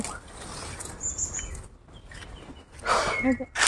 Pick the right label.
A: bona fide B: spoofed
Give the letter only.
A